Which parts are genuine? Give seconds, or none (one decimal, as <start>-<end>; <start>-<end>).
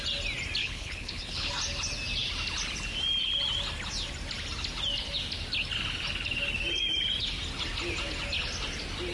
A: 0.0-0.6; 1.5-9.1